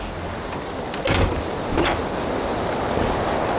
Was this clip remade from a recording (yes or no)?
no